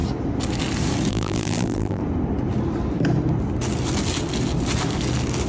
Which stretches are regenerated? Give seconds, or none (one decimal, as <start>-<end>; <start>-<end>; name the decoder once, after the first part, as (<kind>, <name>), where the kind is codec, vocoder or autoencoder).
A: 1.1-2.0 (vocoder, BigVGAN v2)